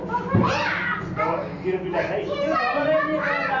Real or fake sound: real